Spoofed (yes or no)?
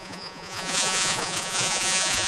yes